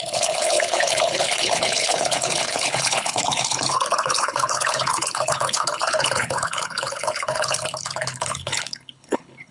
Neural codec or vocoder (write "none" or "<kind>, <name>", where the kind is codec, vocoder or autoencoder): codec, HILCodec